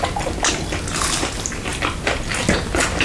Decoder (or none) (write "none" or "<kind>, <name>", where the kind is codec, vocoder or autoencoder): none